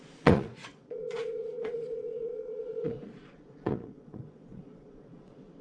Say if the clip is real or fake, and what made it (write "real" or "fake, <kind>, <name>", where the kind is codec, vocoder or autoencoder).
fake, vocoder, Vocos